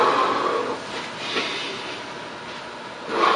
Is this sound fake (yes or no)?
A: no